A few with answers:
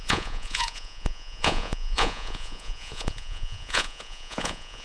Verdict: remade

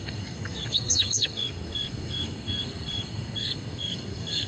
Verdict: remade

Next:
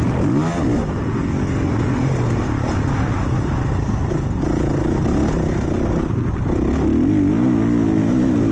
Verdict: recorded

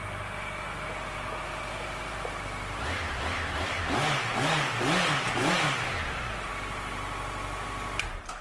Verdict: recorded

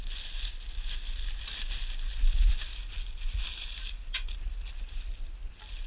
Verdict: recorded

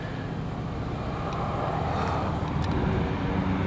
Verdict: recorded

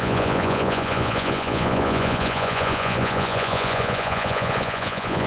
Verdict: remade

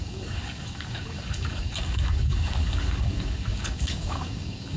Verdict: remade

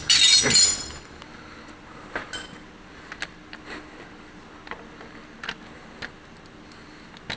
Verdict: recorded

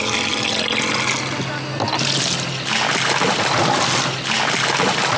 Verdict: recorded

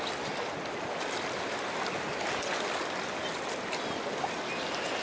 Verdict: recorded